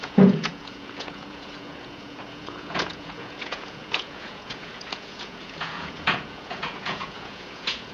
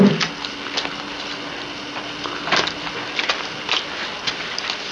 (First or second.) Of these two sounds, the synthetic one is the first